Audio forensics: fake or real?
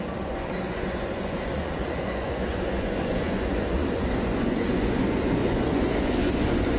fake